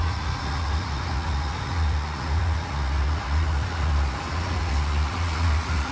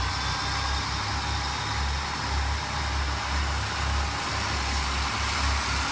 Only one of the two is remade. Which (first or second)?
first